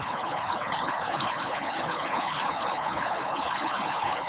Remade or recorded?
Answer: remade